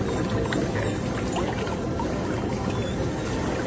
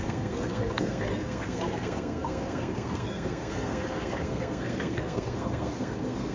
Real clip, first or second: first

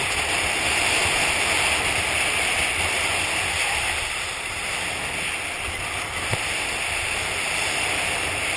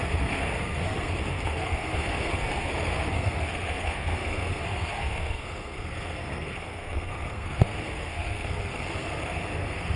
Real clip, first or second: first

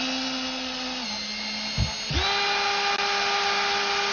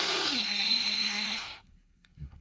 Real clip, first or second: first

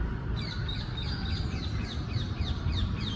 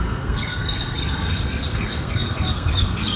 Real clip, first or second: first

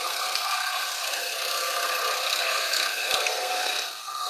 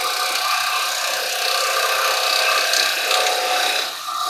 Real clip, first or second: second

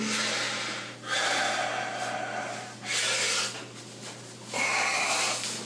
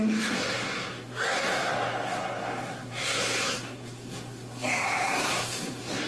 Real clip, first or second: first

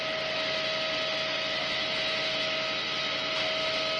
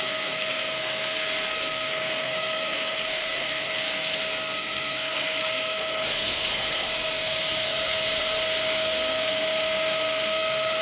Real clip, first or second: first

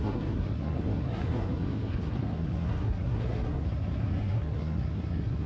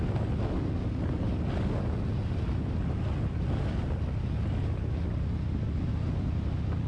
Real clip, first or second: second